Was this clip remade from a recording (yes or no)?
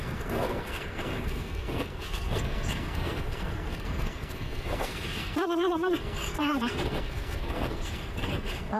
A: yes